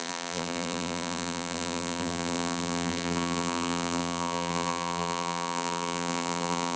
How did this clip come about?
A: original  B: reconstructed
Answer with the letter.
B